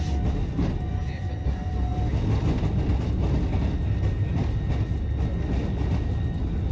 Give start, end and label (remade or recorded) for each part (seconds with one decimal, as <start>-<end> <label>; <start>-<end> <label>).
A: 0.0-6.7 recorded